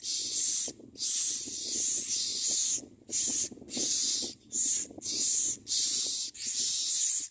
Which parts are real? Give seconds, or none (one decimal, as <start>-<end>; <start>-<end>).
0.0-7.3